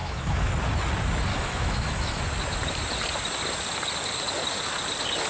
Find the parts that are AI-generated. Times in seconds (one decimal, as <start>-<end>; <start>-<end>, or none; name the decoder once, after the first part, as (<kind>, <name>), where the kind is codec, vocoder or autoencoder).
0.0-0.5 (autoencoder, DAC-VAE); 1.3-2.2